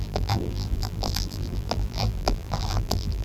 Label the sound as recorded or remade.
remade